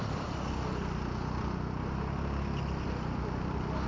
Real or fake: real